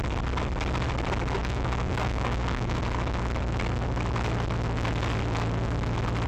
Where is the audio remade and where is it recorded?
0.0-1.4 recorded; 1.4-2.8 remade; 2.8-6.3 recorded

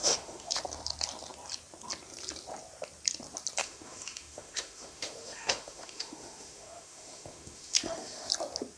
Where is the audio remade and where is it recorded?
0.0-0.6 remade; 0.6-3.6 recorded; 3.6-8.3 remade; 8.3-8.8 recorded

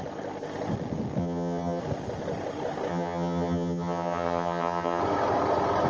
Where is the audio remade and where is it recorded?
0.0-1.2 recorded; 1.2-1.8 remade; 1.8-2.9 recorded; 2.9-5.0 remade; 5.0-5.9 recorded

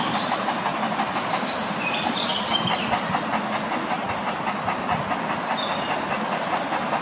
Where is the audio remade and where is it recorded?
0.0-0.7 remade; 0.7-1.3 recorded; 1.3-2.3 remade; 2.3-6.5 recorded; 6.5-7.0 remade

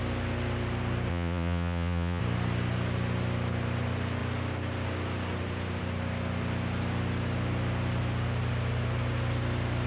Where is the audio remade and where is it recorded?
0.0-1.1 recorded; 1.1-2.2 remade; 2.2-9.9 recorded

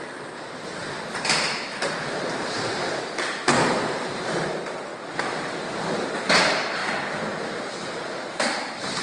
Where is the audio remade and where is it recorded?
0.0-4.9 remade; 4.9-5.7 recorded; 5.7-6.8 remade; 6.8-7.9 recorded; 7.9-9.0 remade

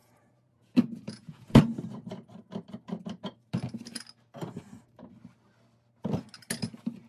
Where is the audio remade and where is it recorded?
0.0-1.6 remade; 1.6-7.1 recorded

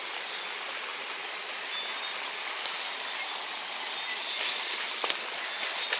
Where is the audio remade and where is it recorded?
0.0-6.0 recorded